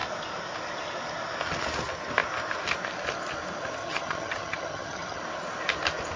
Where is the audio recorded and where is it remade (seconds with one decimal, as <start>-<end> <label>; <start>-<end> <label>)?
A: 0.0-3.8 recorded; 3.8-5.2 remade; 5.2-6.2 recorded